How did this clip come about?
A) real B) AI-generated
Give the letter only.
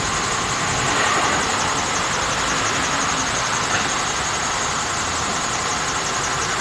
A